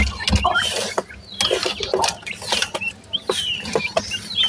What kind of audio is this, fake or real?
real